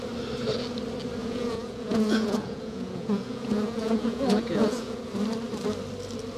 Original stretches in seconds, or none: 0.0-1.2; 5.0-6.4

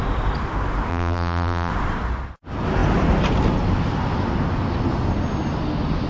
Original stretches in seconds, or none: 0.0-0.9; 1.7-6.1

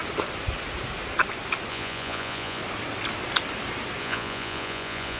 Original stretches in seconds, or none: 0.0-1.7; 2.6-4.0